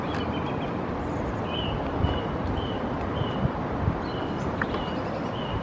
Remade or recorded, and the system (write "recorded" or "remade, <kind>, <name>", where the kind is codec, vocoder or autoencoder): recorded